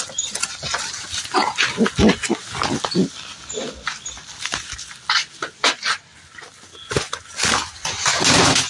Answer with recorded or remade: recorded